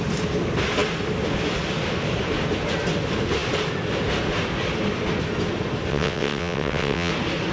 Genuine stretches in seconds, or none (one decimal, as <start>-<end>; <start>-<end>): 0.0-5.9; 7.1-7.5